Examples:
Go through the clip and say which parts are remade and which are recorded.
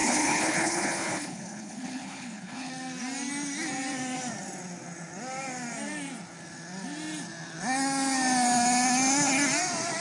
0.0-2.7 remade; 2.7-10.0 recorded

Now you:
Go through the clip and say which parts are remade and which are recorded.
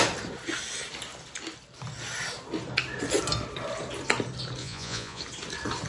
0.0-4.6 recorded; 4.6-5.2 remade; 5.2-5.9 recorded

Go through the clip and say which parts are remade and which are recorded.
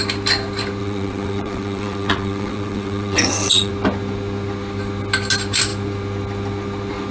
0.0-0.8 recorded; 0.8-3.7 remade; 3.7-7.1 recorded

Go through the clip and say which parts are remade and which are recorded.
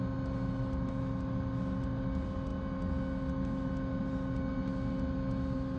0.0-5.8 recorded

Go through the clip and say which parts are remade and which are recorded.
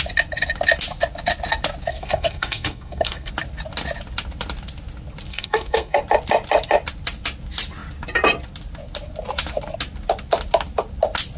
0.0-1.9 recorded; 1.9-3.3 remade; 3.3-5.3 recorded; 5.3-6.0 remade; 6.0-11.4 recorded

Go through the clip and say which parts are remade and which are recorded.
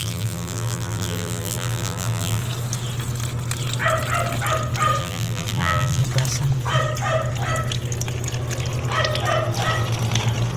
0.0-2.4 remade; 2.4-5.0 recorded; 5.0-6.0 remade; 6.0-10.6 recorded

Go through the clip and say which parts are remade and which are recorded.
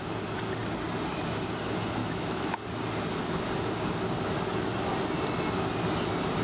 0.0-2.0 recorded; 2.0-2.6 remade; 2.6-6.4 recorded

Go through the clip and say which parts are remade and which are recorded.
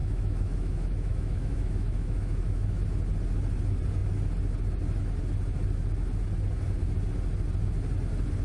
0.0-2.8 remade; 2.8-8.4 recorded